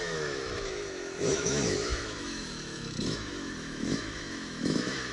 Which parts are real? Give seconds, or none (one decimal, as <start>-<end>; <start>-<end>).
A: none